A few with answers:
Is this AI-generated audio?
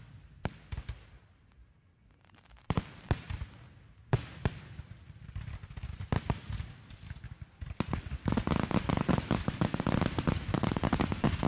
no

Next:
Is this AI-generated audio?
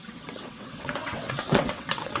yes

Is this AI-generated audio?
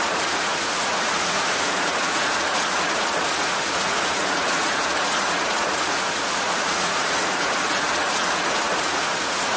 yes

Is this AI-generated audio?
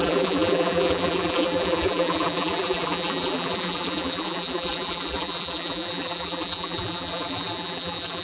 yes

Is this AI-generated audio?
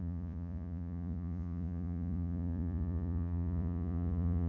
yes